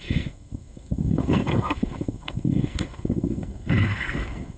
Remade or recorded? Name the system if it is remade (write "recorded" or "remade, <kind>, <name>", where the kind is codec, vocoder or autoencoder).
remade, codec, SNAC